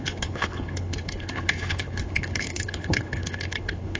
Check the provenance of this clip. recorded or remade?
remade